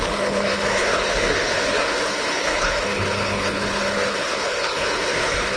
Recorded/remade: remade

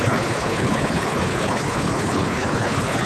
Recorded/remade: remade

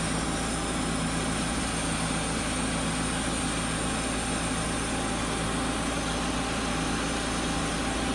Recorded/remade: recorded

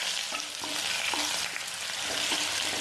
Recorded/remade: recorded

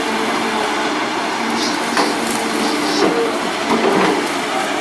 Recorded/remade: recorded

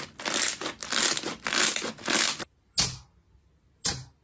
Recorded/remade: recorded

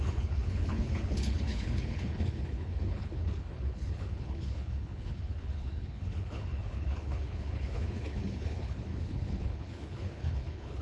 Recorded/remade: remade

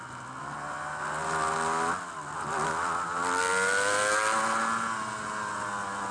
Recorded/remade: recorded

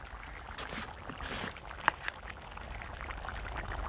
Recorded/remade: recorded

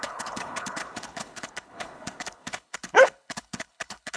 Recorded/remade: remade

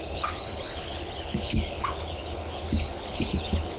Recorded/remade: remade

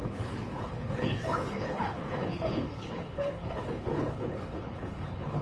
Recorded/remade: remade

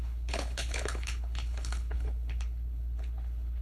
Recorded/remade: remade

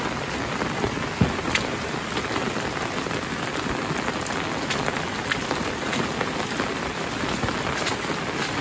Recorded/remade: recorded